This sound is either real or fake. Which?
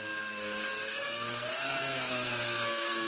fake